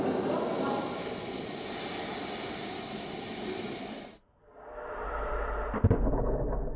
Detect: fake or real real